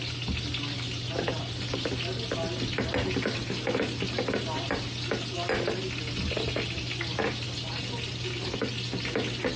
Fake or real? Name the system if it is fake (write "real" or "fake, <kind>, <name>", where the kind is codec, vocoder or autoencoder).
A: real